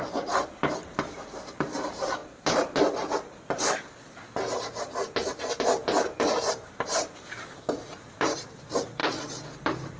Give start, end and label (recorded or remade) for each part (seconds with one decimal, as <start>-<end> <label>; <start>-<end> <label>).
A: 0.0-2.2 remade; 2.2-6.5 recorded; 6.5-9.0 remade; 9.0-9.6 recorded; 9.6-10.0 remade